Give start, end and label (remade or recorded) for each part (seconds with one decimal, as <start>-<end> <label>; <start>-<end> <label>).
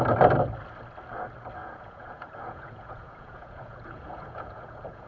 0.0-1.6 recorded; 1.6-5.1 remade